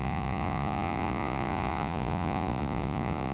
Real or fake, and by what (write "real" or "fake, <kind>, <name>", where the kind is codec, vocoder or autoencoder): fake, vocoder, Vocos